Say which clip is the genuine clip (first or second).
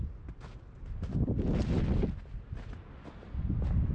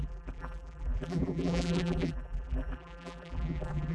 first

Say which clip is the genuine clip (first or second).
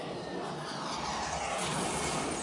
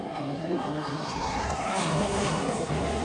first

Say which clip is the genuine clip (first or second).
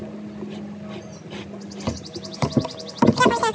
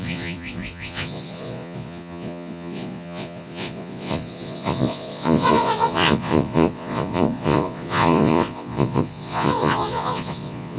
first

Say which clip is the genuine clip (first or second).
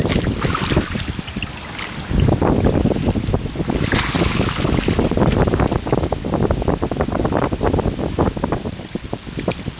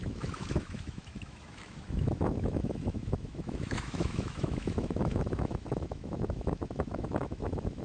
first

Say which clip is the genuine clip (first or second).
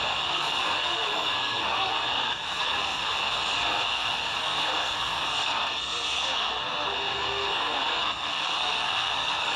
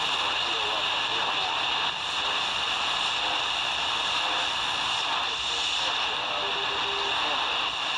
second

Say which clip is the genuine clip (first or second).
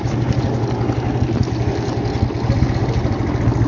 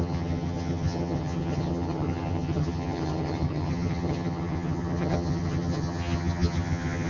first